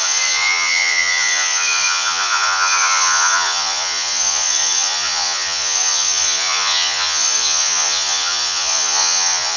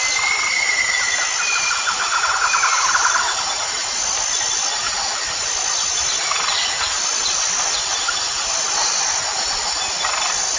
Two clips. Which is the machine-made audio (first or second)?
first